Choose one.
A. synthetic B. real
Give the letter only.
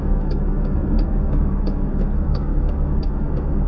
A